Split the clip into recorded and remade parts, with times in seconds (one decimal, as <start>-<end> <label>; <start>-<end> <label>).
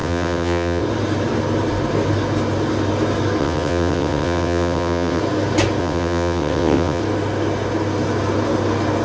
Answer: 0.0-0.8 remade; 0.8-3.4 recorded; 3.4-5.2 remade; 5.2-5.8 recorded; 5.8-7.0 remade; 7.0-9.0 recorded